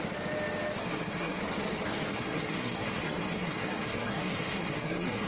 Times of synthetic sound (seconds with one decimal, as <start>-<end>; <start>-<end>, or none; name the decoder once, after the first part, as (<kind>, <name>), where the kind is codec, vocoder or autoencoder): 0.8-1.4 (codec, SNAC); 2.1-5.3